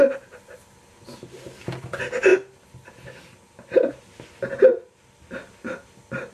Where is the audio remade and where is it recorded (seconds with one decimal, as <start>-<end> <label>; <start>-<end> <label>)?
0.0-6.3 recorded

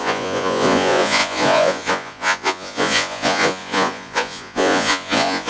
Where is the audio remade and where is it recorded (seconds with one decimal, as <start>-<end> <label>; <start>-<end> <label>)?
0.0-5.5 remade

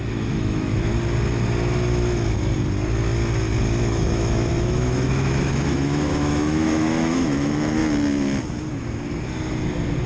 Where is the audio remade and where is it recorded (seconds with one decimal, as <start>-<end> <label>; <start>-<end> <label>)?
0.0-0.9 remade; 0.9-3.8 recorded; 3.8-7.8 remade; 7.8-10.1 recorded

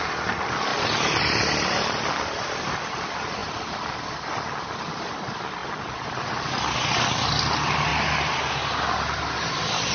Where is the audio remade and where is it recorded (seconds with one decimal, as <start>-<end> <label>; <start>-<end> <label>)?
0.0-9.9 recorded